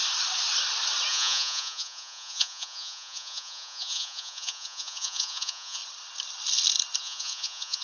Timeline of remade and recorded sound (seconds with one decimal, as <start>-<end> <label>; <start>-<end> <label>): 0.0-1.1 recorded; 1.1-5.8 remade; 5.8-7.0 recorded; 7.0-7.8 remade